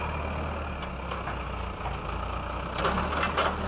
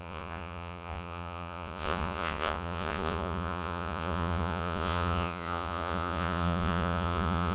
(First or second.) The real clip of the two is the first